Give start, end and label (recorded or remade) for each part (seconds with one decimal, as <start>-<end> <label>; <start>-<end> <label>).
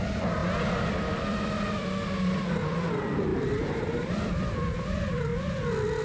0.0-0.4 remade; 0.4-0.9 recorded; 0.9-5.3 remade; 5.3-6.0 recorded